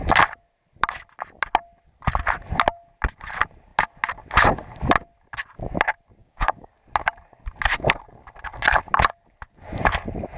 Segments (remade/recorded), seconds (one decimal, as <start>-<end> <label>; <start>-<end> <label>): 0.0-6.2 recorded; 6.2-6.7 remade; 6.7-10.4 recorded